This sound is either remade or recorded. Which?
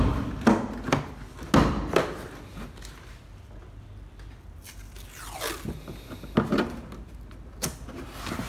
recorded